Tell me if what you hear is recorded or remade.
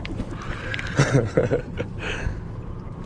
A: recorded